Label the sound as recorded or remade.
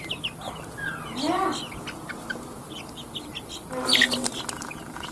recorded